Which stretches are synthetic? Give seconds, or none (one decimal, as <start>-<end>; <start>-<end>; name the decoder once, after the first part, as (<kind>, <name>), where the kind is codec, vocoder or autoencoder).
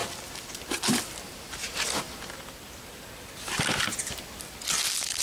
0.0-0.7 (vocoder, BigVGAN v2)